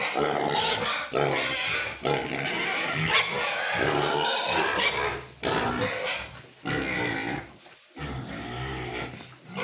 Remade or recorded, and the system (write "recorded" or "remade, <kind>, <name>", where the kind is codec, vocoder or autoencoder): recorded